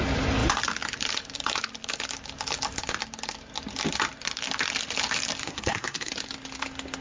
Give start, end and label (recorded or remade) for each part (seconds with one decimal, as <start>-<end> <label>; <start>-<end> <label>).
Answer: 0.0-5.4 recorded; 5.4-6.1 remade; 6.1-7.0 recorded

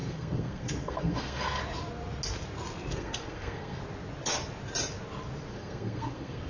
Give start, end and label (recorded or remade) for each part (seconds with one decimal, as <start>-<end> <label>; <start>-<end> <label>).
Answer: 0.0-1.6 remade; 1.6-2.9 recorded; 2.9-3.8 remade; 3.8-5.5 recorded; 5.5-6.5 remade

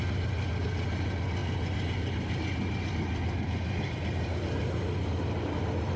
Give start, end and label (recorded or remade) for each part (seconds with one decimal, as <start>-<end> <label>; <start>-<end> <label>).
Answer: 0.0-6.0 recorded

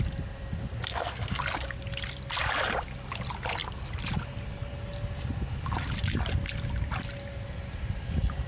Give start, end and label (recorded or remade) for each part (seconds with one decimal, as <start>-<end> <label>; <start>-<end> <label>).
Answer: 0.0-0.9 recorded; 0.9-1.4 remade; 1.4-8.5 recorded

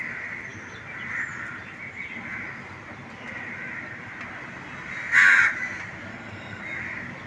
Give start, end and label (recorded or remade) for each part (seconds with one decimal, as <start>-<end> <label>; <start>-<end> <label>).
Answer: 0.0-6.1 recorded; 6.1-6.6 remade; 6.6-7.3 recorded

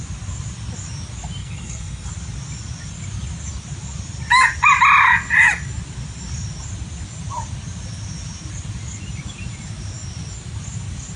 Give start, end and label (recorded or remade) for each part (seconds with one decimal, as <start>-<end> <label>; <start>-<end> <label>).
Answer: 0.0-1.4 recorded; 1.4-2.1 remade; 2.1-11.2 recorded